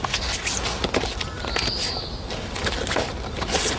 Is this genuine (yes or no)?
yes